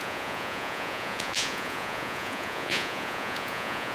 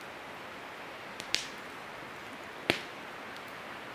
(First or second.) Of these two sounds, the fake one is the first